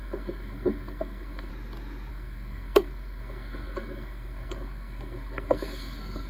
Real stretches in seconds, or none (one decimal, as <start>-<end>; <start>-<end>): 1.5-2.1